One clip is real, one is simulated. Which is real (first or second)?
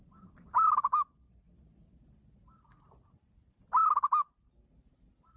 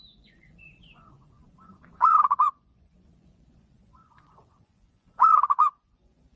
first